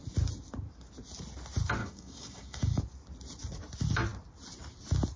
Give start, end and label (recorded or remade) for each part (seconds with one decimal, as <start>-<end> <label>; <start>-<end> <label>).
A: 0.0-1.8 recorded; 1.8-2.8 remade; 2.8-5.2 recorded